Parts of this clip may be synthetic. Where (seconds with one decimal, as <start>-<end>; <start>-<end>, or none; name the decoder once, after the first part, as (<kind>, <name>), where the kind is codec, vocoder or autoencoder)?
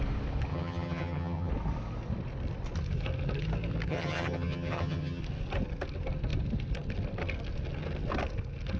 0.5-1.5 (vocoder, HiFi-GAN); 3.9-5.2